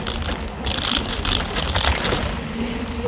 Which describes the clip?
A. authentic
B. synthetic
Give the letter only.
A